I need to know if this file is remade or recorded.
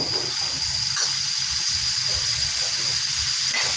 recorded